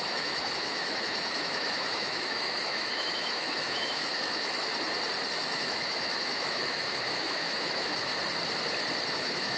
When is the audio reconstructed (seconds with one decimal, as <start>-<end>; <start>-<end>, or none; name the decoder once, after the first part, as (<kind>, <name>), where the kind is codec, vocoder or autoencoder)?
0.0-4.7 (autoencoder, DAC-VAE); 5.3-8.1; 9.1-9.6